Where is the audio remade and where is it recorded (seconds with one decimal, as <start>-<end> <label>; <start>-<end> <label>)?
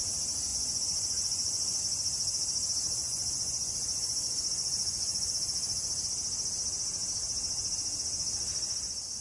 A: 0.0-0.5 recorded; 0.5-1.8 remade; 1.8-2.8 recorded; 2.8-5.3 remade; 5.3-8.5 recorded; 8.5-9.2 remade